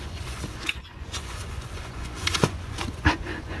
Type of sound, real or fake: fake